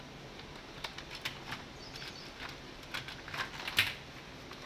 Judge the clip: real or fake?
real